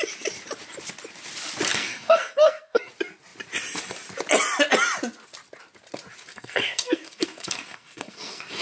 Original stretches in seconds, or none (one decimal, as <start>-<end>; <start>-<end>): 0.0-1.7; 2.9-6.3